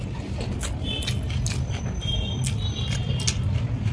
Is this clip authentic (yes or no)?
yes